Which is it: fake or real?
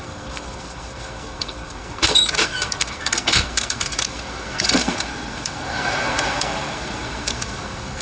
fake